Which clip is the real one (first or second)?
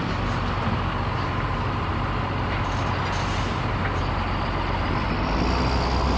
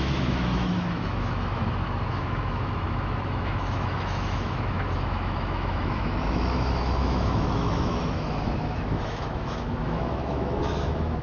first